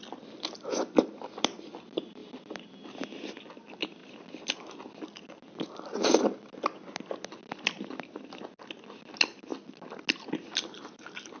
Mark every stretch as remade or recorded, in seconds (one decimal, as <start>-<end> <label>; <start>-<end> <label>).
0.0-11.4 recorded